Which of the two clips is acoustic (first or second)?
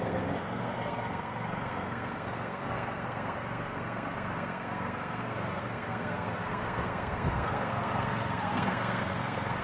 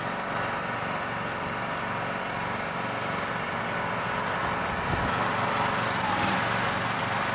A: second